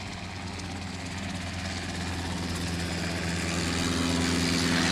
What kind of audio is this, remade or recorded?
recorded